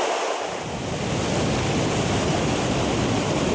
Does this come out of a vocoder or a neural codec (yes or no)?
no